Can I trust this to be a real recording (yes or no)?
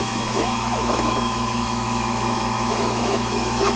no